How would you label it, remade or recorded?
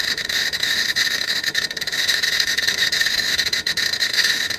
remade